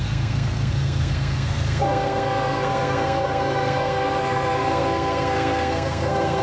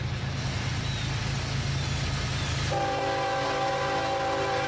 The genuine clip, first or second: second